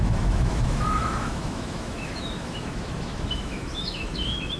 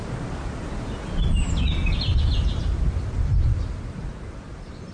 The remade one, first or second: first